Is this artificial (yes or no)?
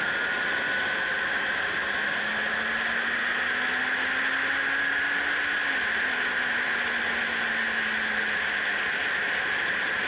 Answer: no